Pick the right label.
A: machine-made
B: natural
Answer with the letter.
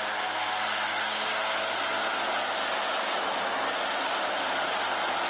B